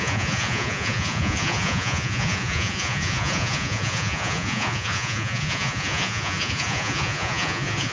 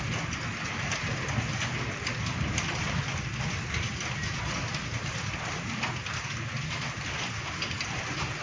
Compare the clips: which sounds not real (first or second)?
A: first